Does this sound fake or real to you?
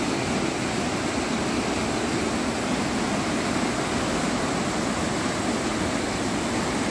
real